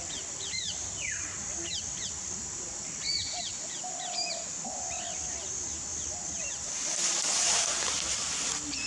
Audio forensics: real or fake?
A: real